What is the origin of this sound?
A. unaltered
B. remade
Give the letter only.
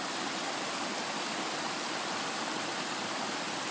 A